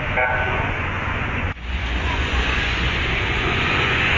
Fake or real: fake